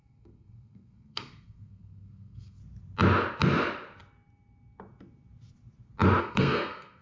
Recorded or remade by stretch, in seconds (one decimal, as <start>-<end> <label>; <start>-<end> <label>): 0.0-2.6 remade; 2.6-6.2 recorded; 6.2-7.0 remade